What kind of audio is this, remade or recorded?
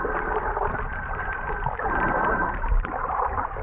remade